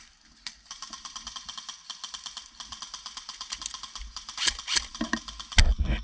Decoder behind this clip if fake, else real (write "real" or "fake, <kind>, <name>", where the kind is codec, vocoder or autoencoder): real